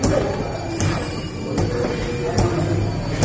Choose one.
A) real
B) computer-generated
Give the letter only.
A